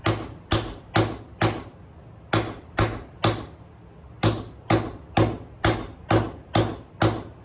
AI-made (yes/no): no